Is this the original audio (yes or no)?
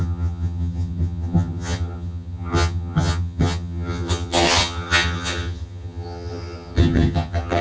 no